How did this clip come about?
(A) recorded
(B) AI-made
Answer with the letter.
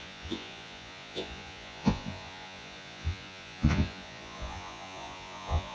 B